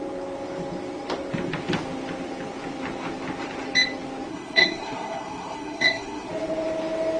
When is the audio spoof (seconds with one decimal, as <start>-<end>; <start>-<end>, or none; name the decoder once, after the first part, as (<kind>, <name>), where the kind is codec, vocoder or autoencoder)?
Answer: 4.3-6.3 (codec, SNAC)